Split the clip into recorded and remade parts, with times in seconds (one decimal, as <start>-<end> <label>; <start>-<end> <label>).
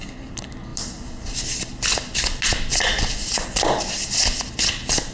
0.0-5.1 recorded